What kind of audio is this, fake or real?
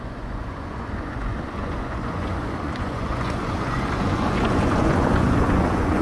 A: fake